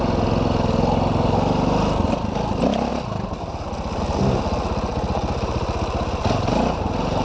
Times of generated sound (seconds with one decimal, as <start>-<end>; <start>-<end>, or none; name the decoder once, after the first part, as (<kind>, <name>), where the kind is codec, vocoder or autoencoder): none